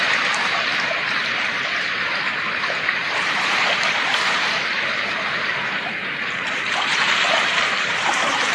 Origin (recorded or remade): remade